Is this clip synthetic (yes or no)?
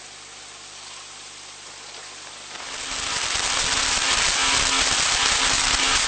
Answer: no